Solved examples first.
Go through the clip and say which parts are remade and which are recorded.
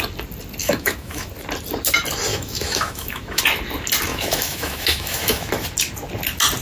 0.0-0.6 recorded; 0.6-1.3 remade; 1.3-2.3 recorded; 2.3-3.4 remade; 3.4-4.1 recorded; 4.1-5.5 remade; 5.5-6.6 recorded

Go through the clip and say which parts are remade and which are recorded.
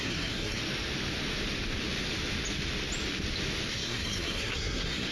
0.0-0.6 remade; 0.6-3.7 recorded; 3.7-5.1 remade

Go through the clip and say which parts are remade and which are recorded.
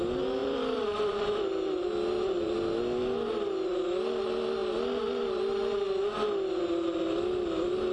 0.0-0.4 recorded; 0.4-1.4 remade; 1.4-7.9 recorded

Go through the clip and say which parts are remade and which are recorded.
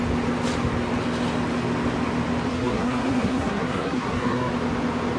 0.0-2.5 recorded; 2.5-4.5 remade; 4.5-5.2 recorded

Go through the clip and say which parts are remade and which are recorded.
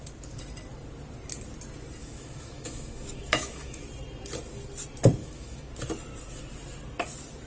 0.0-2.0 recorded; 2.0-3.8 remade; 3.8-5.2 recorded; 5.2-5.7 remade; 5.7-7.5 recorded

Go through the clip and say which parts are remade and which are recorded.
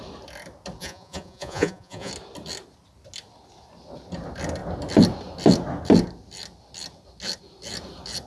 0.0-0.8 recorded; 0.8-2.1 remade; 2.1-8.3 recorded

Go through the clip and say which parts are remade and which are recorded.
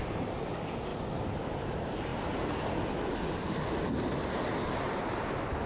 0.0-2.1 recorded; 2.1-2.7 remade; 2.7-5.7 recorded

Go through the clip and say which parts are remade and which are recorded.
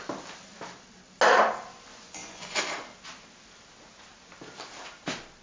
0.0-1.9 recorded; 1.9-2.6 remade; 2.6-5.4 recorded